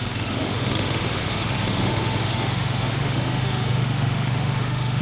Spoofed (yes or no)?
yes